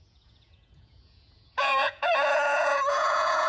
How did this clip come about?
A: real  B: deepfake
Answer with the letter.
B